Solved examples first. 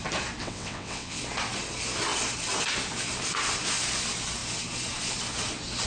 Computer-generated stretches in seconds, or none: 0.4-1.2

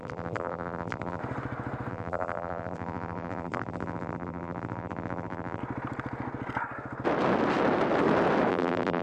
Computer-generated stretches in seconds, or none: 0.0-1.2; 1.9-5.6; 8.5-9.0

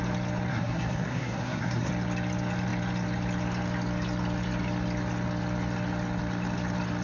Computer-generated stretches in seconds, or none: 0.5-1.9